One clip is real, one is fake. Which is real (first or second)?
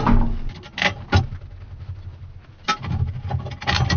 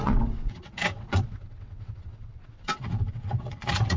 first